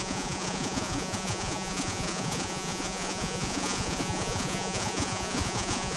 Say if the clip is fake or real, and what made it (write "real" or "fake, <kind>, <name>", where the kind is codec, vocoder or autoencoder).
fake, vocoder, Vocos